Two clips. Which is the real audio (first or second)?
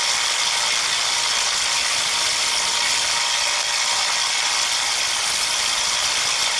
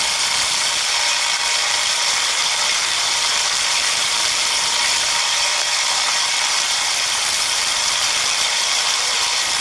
first